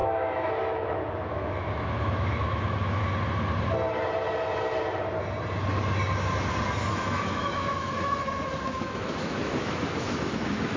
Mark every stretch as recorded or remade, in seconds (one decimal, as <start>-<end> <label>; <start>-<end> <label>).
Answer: 0.0-3.0 remade; 3.0-6.9 recorded; 6.9-10.8 remade